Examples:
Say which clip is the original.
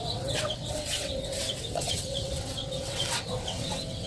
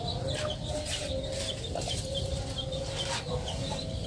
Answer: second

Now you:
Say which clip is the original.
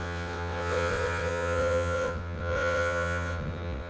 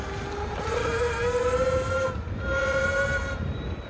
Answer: second